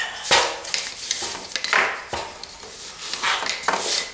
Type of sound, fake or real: real